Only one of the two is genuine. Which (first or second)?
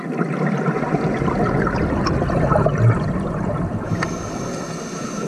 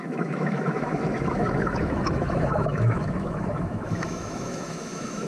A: first